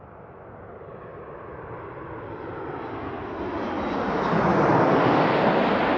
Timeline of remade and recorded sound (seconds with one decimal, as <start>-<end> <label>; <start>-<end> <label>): 0.0-6.0 recorded